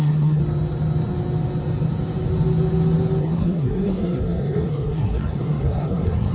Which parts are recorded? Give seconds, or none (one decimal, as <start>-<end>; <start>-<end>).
0.4-3.2